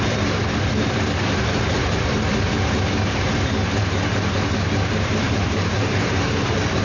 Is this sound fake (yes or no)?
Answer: yes